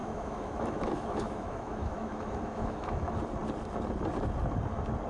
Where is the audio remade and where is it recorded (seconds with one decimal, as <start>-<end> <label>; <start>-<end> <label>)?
0.0-3.1 remade; 3.1-5.1 recorded